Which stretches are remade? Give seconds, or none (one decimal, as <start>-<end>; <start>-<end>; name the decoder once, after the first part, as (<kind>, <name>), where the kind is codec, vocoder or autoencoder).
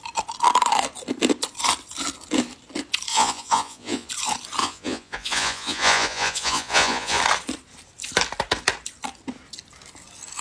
3.1-4.1 (vocoder, Vocos); 4.6-7.2